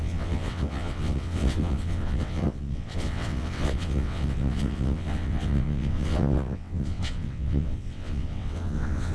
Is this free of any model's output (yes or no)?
no